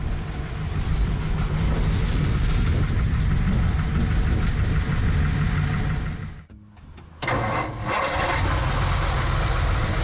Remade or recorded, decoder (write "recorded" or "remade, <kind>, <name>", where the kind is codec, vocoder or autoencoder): recorded